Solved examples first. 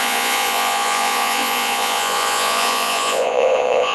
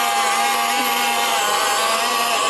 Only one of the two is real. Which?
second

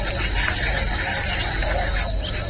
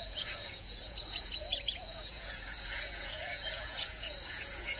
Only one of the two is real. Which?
first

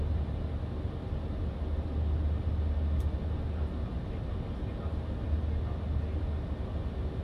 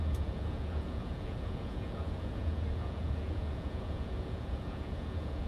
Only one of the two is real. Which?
first